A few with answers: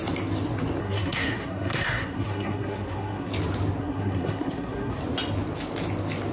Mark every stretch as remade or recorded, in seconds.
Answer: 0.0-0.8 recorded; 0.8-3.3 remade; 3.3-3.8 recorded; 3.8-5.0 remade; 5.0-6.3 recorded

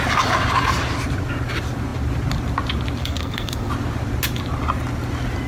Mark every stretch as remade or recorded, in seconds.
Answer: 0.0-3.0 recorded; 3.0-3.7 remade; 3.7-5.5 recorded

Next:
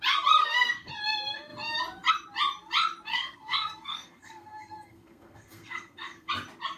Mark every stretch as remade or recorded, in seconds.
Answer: 0.0-0.4 recorded; 0.4-0.9 remade; 0.9-3.1 recorded; 3.1-6.3 remade; 6.3-6.8 recorded

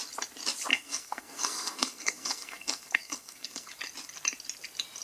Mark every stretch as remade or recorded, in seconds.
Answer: 0.0-0.7 recorded; 0.7-3.7 remade; 3.7-5.0 recorded